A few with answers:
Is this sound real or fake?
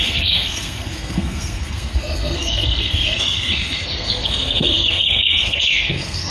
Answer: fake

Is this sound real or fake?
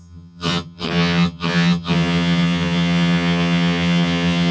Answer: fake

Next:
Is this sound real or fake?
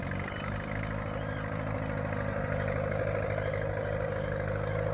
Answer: real